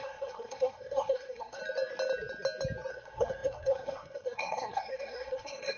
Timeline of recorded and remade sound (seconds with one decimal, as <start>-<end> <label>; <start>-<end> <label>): 0.0-1.6 remade; 1.6-2.9 recorded; 2.9-5.8 remade